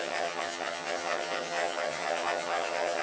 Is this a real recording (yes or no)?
no